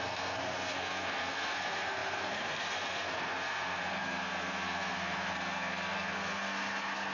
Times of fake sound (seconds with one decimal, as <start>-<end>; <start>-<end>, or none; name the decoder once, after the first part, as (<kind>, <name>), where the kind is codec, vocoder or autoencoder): 0.0-7.1 (codec, SNAC)